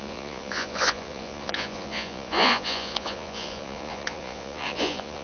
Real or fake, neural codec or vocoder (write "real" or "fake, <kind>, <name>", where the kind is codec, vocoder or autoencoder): fake, vocoder, Vocos